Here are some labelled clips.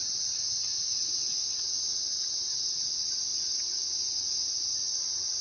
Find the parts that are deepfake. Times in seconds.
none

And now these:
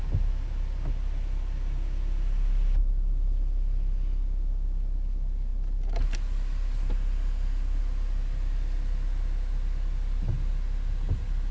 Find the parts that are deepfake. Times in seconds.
none

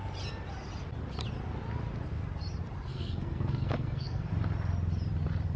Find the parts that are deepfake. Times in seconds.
2.9-4.3